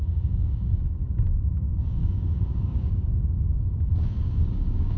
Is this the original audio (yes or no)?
no